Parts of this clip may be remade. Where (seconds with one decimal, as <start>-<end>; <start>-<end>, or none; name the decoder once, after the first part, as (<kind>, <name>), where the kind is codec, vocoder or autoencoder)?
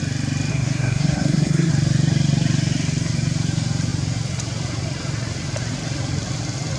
0.5-1.7 (codec, SNAC)